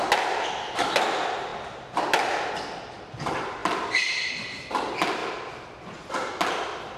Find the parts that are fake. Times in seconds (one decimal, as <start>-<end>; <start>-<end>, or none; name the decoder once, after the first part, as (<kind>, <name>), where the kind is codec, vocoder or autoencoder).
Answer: none